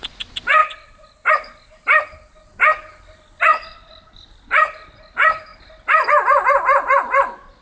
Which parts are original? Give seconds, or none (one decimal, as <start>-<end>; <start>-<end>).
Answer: 0.0-0.6; 1.3-3.5; 5.1-7.6